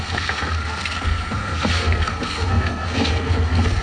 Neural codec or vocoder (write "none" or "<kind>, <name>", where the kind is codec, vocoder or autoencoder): codec, SNAC